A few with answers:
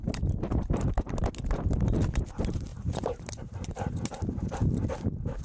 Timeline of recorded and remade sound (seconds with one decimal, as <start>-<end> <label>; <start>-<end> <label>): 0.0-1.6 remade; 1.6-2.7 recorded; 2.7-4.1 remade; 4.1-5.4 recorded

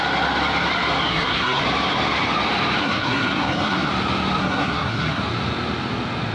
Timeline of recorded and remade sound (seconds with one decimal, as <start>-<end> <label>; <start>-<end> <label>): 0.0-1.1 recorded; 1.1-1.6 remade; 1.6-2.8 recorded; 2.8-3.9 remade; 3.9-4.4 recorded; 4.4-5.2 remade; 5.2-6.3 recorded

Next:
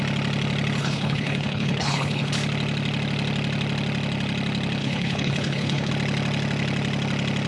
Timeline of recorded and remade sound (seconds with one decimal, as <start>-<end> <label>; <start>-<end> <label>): 0.0-0.8 recorded; 0.8-2.3 remade; 2.3-4.8 recorded; 4.8-5.9 remade; 5.9-7.5 recorded